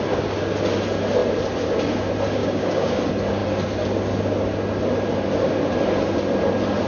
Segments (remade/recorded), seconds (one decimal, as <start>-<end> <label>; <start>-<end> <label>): 0.0-2.4 recorded; 2.4-3.0 remade; 3.0-6.9 recorded